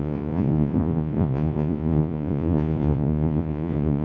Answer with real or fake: fake